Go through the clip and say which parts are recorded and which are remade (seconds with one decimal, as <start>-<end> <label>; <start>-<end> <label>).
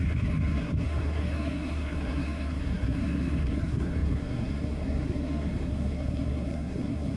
0.0-7.2 remade